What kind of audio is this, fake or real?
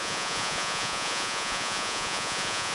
fake